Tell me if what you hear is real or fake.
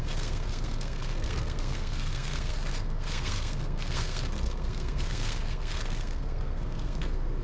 fake